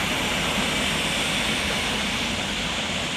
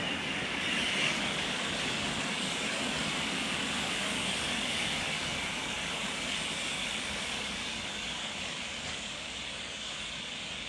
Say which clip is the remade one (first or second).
second